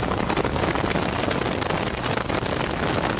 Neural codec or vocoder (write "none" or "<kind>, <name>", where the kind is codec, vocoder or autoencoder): none